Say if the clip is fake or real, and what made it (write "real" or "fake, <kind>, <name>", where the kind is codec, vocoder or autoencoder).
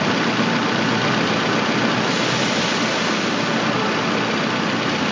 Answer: real